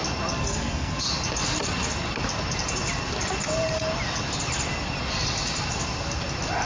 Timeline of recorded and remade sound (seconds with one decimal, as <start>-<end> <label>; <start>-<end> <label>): 0.0-0.4 recorded; 0.4-1.0 remade; 1.0-6.7 recorded